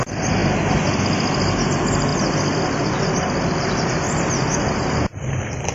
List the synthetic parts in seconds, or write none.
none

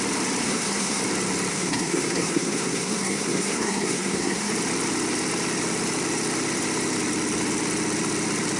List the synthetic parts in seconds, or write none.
0.4-1.0 (codec, SNAC); 1.5-4.5

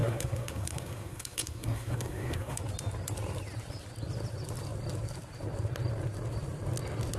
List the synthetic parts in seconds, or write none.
0.0-2.6 (codec, SNAC)

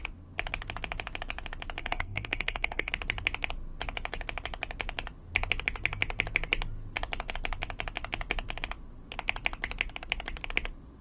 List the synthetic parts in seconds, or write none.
1.8-2.9 (codec, SNAC)

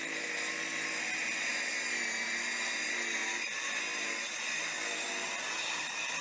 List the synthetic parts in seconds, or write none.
none